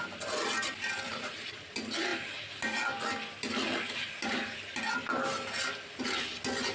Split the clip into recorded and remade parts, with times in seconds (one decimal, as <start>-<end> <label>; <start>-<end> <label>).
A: 0.0-1.1 recorded; 1.1-1.7 remade; 1.7-6.7 recorded